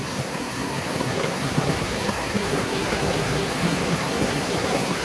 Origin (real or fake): fake